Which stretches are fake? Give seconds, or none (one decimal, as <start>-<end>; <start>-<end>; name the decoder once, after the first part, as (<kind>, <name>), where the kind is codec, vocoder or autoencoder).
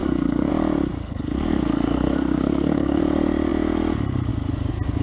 0.0-0.5 (codec, SNAC); 0.9-3.0